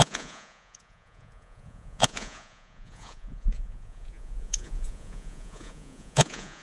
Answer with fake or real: fake